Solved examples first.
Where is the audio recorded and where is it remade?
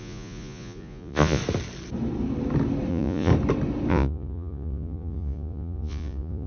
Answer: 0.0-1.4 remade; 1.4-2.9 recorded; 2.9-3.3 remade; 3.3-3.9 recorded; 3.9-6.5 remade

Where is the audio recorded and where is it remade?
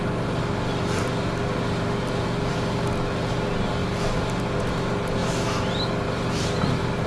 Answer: 0.0-7.1 recorded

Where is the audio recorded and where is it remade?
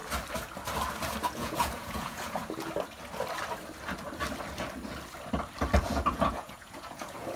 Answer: 0.0-1.2 recorded; 1.2-2.4 remade; 2.4-5.8 recorded; 5.8-7.4 remade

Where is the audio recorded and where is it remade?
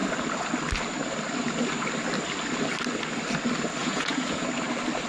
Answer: 0.0-3.8 recorded; 3.8-4.4 remade; 4.4-5.1 recorded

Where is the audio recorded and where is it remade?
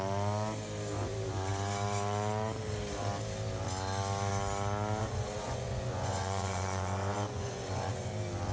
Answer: 0.0-5.0 recorded; 5.0-8.1 remade; 8.1-8.5 recorded